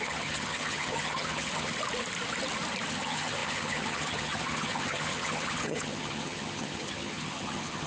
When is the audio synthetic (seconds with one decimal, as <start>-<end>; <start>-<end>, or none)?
0.0-1.7; 2.9-7.9